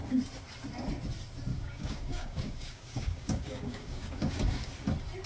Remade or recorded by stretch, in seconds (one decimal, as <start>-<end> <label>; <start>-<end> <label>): 0.0-1.5 recorded; 1.5-4.7 remade; 4.7-5.3 recorded